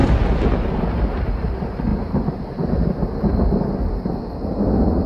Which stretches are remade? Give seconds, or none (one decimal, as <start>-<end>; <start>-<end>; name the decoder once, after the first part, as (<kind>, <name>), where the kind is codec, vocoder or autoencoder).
none